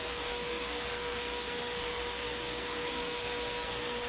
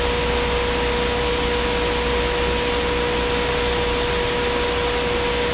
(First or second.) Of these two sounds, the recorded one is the second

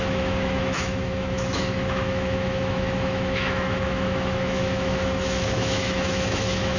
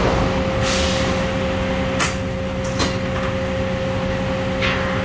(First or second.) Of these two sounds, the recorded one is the second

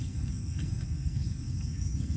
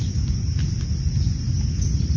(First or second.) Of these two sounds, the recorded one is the second